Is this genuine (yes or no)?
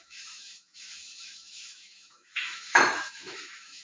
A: no